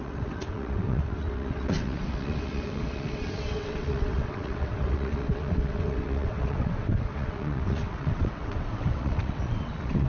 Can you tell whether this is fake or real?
fake